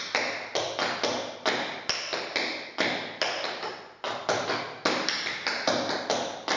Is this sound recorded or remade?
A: recorded